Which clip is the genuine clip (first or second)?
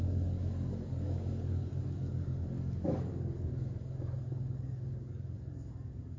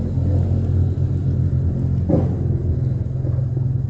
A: second